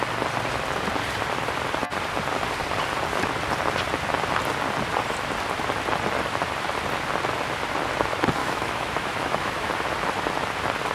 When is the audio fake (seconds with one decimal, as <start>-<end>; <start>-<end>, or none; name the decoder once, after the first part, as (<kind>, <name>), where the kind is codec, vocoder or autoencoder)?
8.4-9.7 (autoencoder, DAC-VAE)